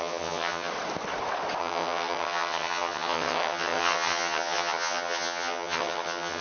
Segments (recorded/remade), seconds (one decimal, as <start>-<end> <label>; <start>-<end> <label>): 0.0-0.7 remade; 0.7-1.6 recorded; 1.6-6.4 remade